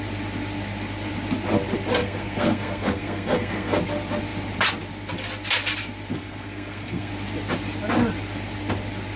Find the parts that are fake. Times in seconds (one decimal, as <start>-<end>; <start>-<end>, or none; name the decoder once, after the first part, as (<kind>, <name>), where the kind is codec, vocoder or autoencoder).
2.0-3.8 (codec, SNAC); 6.1-7.1